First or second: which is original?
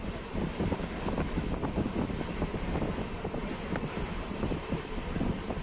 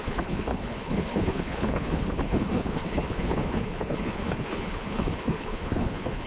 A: first